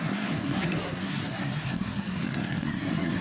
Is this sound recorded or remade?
remade